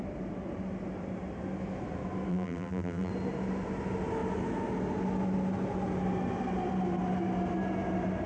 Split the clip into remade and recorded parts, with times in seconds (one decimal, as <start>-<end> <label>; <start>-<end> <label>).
0.0-2.3 recorded; 2.3-3.1 remade; 3.1-8.3 recorded